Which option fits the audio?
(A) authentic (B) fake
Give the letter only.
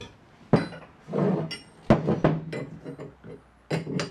A